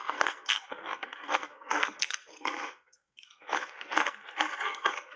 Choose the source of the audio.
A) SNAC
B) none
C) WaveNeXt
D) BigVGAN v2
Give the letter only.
A